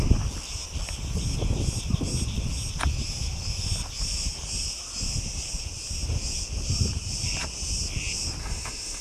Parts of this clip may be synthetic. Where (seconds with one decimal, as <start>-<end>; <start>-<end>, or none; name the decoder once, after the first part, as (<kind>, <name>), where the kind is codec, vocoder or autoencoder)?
8.4-9.0 (autoencoder, DAC-VAE)